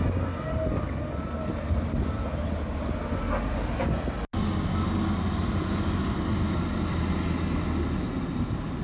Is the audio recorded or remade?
recorded